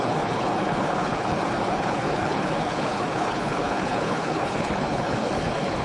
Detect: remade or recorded remade